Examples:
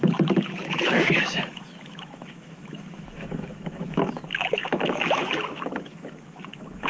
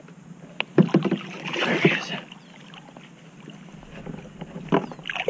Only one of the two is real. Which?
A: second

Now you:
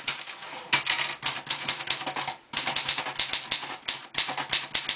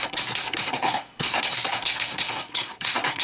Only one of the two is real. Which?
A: first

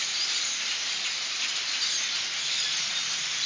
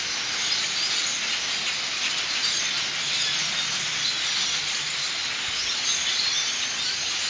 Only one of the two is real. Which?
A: second